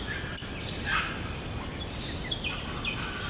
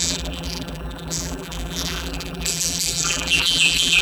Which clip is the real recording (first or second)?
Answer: first